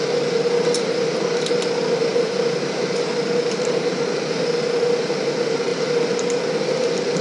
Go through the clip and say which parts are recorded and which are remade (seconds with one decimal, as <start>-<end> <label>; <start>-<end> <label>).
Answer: 0.0-2.1 recorded; 2.1-3.9 remade; 3.9-7.2 recorded